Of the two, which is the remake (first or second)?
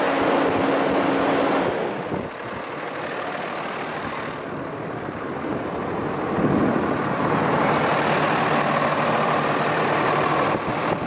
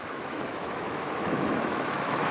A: second